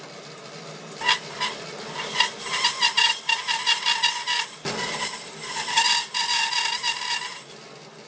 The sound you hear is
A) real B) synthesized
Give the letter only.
A